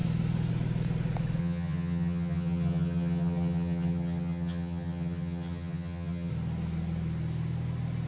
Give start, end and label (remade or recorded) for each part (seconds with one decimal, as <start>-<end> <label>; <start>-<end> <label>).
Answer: 0.0-1.4 recorded; 1.4-6.3 remade; 6.3-8.1 recorded